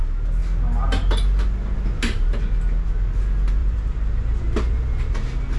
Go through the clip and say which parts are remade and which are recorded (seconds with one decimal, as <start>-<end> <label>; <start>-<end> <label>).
0.0-3.6 recorded; 3.6-4.7 remade; 4.7-5.6 recorded